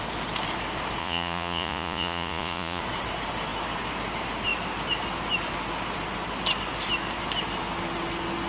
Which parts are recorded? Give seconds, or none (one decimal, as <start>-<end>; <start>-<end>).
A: 0.0-1.0; 2.8-8.5